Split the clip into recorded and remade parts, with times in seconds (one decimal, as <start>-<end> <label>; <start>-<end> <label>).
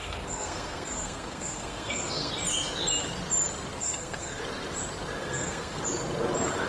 0.0-2.3 remade; 2.3-3.8 recorded; 3.8-4.4 remade; 4.4-5.2 recorded; 5.2-5.8 remade; 5.8-6.7 recorded